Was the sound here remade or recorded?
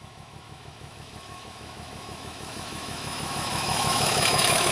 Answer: remade